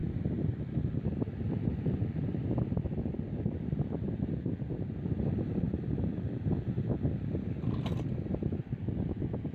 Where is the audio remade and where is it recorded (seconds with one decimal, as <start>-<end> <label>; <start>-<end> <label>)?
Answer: 0.0-0.7 recorded; 0.7-9.5 remade